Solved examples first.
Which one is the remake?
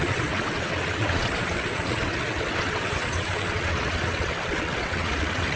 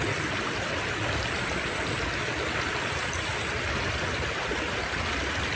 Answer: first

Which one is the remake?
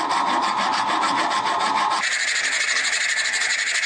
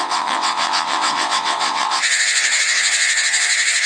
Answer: second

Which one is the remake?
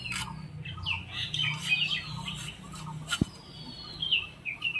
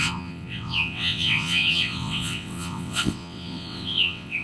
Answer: second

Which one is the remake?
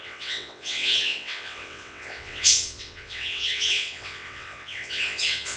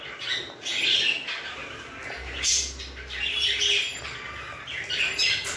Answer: first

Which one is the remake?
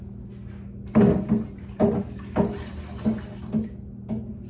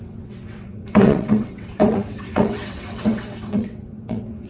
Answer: second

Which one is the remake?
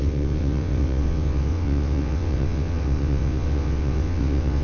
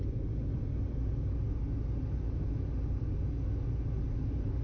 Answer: first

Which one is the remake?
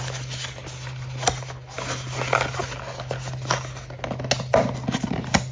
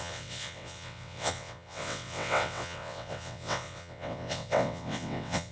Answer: second